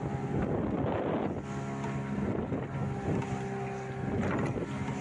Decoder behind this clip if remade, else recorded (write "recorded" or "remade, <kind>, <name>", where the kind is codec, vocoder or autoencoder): recorded